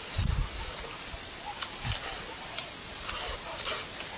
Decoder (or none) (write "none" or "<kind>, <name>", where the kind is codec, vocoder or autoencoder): none